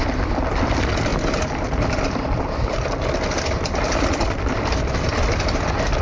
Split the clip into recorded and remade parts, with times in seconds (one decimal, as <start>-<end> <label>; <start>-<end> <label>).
0.0-6.0 remade